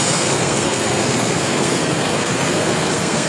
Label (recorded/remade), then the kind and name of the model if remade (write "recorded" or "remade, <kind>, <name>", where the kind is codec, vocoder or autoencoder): remade, codec, SNAC